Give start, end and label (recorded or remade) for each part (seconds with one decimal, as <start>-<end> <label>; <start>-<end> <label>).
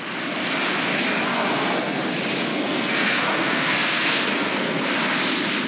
0.0-1.3 recorded; 1.3-2.0 remade; 2.0-2.5 recorded; 2.5-4.8 remade; 4.8-5.7 recorded